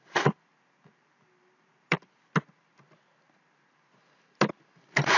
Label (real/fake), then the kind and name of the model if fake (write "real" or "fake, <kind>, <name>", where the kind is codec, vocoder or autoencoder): real